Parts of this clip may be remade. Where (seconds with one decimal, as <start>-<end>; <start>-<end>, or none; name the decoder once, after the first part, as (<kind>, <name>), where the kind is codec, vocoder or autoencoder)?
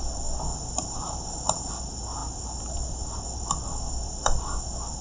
0.5-1.8 (vocoder, BigVGAN v2)